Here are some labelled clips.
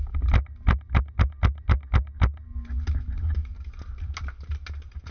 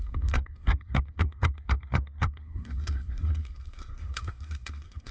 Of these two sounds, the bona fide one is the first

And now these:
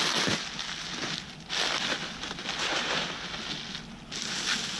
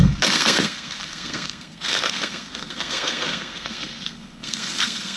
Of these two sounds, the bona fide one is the first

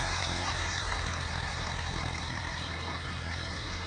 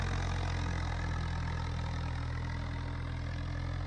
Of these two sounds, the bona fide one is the second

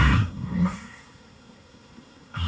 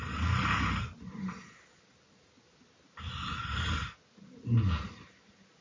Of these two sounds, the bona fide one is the second